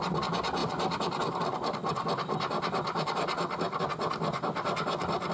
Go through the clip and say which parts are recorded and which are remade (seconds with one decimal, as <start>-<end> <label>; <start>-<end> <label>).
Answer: 0.0-5.3 recorded

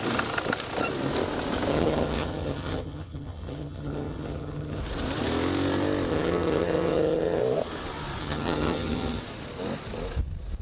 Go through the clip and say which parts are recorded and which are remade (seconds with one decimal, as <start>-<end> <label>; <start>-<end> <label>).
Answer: 0.0-1.7 recorded; 1.7-4.8 remade; 4.8-6.1 recorded; 6.1-7.4 remade; 7.4-8.2 recorded; 8.2-9.2 remade; 9.2-10.6 recorded

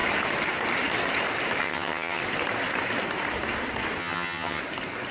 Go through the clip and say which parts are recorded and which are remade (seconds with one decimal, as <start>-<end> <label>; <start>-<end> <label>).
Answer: 0.0-1.6 recorded; 1.6-2.2 remade; 2.2-4.0 recorded; 4.0-4.6 remade; 4.6-5.1 recorded

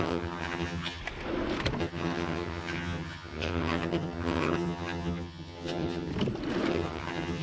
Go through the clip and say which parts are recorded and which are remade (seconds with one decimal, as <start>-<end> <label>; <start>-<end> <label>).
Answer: 0.0-1.0 remade; 1.0-1.8 recorded; 1.8-6.1 remade; 6.1-6.7 recorded; 6.7-7.4 remade

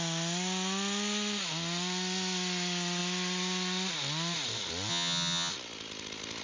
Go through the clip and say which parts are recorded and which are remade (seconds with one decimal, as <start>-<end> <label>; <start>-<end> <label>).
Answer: 0.0-4.9 recorded; 4.9-5.5 remade; 5.5-6.4 recorded

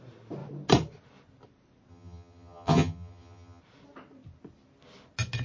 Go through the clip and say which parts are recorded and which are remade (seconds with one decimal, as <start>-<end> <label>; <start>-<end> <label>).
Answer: 0.0-1.9 recorded; 1.9-3.6 remade; 3.6-5.4 recorded

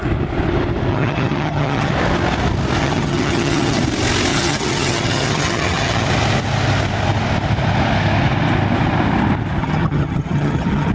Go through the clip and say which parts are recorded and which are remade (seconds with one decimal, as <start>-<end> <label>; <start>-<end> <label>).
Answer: 0.0-0.9 recorded; 0.9-1.9 remade; 1.9-2.8 recorded; 2.8-3.8 remade; 3.8-4.3 recorded; 4.3-6.1 remade; 6.1-9.6 recorded; 9.6-10.9 remade

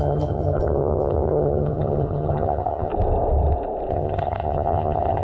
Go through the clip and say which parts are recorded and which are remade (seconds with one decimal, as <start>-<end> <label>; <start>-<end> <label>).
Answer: 0.0-2.9 remade; 2.9-3.9 recorded; 3.9-5.2 remade